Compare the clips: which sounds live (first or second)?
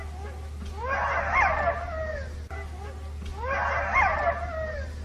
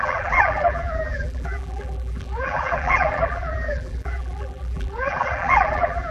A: first